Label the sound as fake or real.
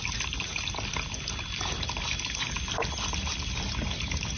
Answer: real